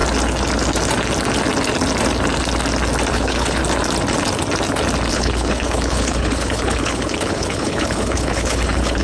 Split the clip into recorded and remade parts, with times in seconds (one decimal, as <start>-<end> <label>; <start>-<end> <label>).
0.0-3.1 recorded; 3.1-3.6 remade; 3.6-5.1 recorded; 5.1-9.0 remade